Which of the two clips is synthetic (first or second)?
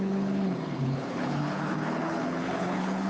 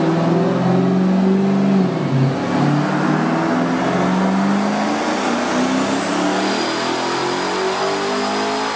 first